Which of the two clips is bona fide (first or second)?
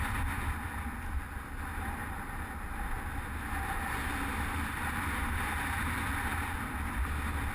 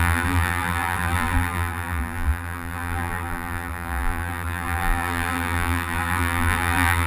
first